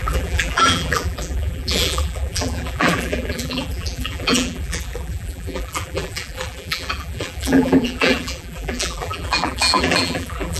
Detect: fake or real fake